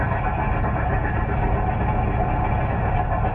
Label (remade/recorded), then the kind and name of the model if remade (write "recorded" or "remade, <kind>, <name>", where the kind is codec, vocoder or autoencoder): recorded